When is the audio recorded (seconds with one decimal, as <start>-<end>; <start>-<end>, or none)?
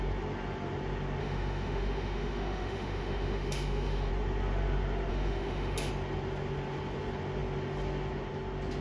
0.0-1.2; 4.1-5.1; 5.9-8.8